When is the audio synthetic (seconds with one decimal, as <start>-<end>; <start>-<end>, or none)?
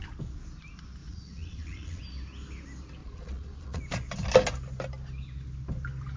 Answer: 1.0-2.0; 3.0-3.8